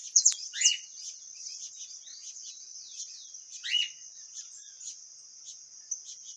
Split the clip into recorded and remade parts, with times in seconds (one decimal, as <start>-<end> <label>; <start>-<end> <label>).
0.0-1.7 remade; 1.7-2.7 recorded; 2.7-5.7 remade; 5.7-6.4 recorded